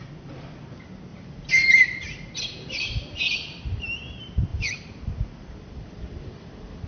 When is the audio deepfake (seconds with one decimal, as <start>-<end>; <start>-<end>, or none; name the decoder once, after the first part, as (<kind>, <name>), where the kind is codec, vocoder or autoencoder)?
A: 1.1-3.2 (vocoder, BigVGAN v2); 4.5-6.9